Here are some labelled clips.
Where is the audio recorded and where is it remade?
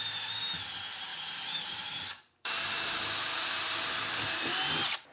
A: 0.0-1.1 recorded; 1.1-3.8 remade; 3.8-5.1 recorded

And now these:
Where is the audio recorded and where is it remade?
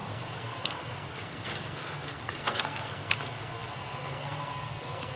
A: 0.0-5.2 remade